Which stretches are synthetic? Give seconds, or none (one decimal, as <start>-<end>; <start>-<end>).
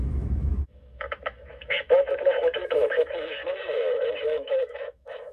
0.0-5.3